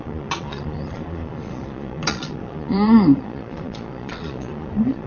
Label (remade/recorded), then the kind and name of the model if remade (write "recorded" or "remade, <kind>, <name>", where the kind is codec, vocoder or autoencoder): remade, vocoder, Vocos